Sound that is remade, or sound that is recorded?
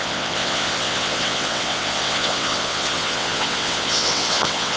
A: remade